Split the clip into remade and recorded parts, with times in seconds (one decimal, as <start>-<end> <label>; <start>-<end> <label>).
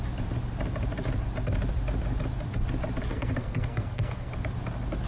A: 0.0-3.1 recorded; 3.1-4.3 remade; 4.3-5.1 recorded